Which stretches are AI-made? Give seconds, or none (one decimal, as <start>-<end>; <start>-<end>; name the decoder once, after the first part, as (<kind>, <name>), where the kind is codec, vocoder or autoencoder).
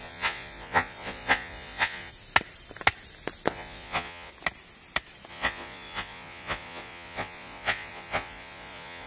0.0-2.1 (vocoder, Vocos); 3.5-4.3; 5.3-9.1